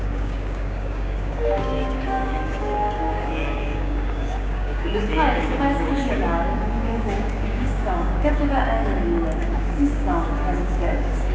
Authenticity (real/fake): fake